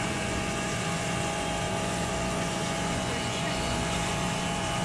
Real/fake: fake